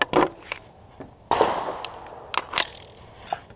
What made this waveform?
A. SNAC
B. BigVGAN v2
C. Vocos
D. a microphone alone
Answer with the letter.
D